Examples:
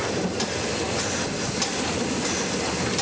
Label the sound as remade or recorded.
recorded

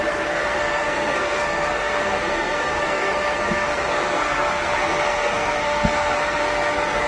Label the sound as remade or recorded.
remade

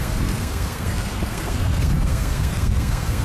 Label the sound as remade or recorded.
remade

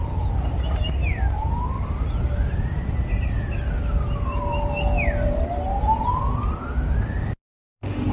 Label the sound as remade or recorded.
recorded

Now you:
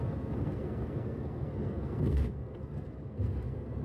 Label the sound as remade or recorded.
remade